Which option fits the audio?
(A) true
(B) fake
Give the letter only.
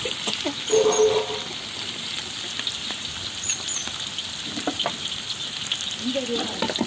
A